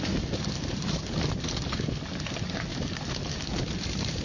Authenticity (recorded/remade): recorded